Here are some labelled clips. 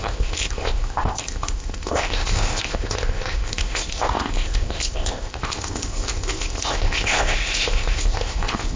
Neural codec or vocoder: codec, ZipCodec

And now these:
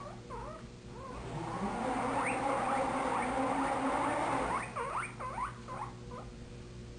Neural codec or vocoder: none